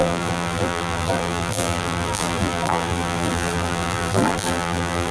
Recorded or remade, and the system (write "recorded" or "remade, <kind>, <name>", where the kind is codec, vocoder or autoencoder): remade, vocoder, BigVGAN v2